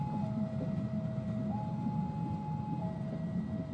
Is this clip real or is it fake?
real